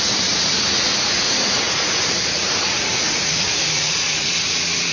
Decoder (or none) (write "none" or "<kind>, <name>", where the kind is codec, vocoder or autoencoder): vocoder, Vocos